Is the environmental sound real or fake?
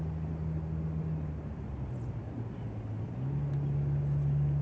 real